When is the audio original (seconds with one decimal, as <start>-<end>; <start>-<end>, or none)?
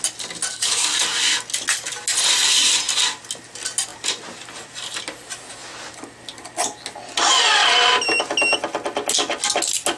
0.0-0.5; 1.0-10.0